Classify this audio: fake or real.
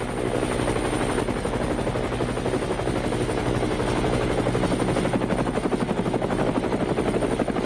real